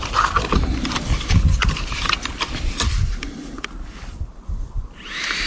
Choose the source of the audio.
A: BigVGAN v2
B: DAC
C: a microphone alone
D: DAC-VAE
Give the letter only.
A